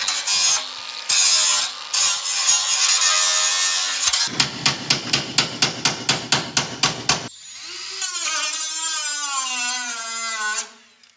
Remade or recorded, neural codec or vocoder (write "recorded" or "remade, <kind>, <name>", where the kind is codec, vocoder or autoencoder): recorded